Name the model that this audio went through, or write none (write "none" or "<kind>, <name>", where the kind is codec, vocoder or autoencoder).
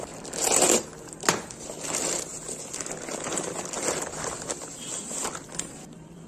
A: none